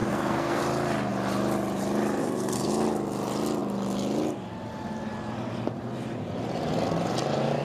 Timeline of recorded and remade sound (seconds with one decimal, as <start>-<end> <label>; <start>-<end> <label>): 0.0-0.6 remade; 0.6-2.2 recorded; 2.2-2.7 remade; 2.7-7.6 recorded

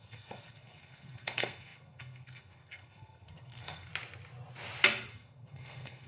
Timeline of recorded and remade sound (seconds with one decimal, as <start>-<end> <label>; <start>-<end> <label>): 0.0-3.9 remade; 3.9-5.1 recorded; 5.1-6.1 remade

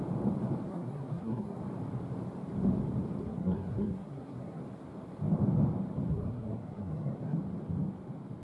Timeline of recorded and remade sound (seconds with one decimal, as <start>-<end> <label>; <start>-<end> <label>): 0.0-0.7 recorded; 0.7-1.6 remade; 1.6-3.2 recorded; 3.2-4.6 remade; 4.6-6.1 recorded; 6.1-7.4 remade; 7.4-8.4 recorded

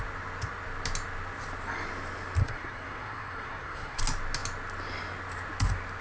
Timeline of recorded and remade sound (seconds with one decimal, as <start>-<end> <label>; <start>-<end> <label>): 0.0-2.4 recorded; 2.4-4.0 remade; 4.0-6.0 recorded

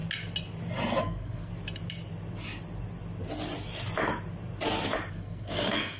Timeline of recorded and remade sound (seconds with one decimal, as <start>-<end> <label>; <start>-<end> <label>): 0.0-1.0 recorded; 1.0-1.5 remade; 1.5-5.1 recorded; 5.1-6.0 remade